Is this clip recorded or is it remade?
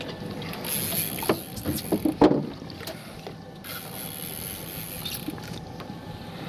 recorded